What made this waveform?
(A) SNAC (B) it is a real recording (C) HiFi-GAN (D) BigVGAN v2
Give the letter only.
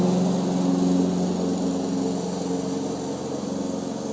B